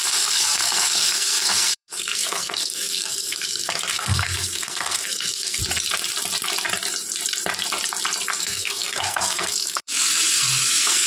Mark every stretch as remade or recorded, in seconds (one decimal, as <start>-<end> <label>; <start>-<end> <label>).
0.0-5.6 remade; 5.6-8.3 recorded; 8.3-11.1 remade